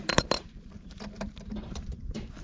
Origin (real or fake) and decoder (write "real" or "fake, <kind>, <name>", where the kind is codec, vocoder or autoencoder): fake, vocoder, BigVGAN v2